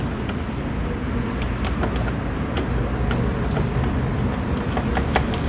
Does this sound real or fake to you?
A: real